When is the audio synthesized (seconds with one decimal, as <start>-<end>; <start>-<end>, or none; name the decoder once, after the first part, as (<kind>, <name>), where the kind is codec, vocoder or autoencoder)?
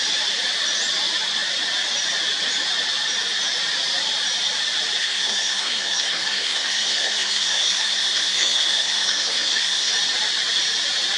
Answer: 5.0-9.9 (codec, SNAC)